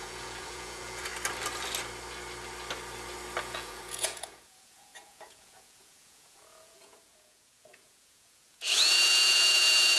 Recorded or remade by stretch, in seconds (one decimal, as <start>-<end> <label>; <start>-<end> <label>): 0.0-1.1 remade; 1.1-3.4 recorded; 3.4-10.0 remade